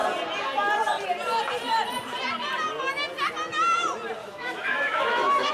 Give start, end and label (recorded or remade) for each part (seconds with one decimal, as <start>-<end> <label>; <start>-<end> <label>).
0.0-4.2 recorded; 4.2-5.5 remade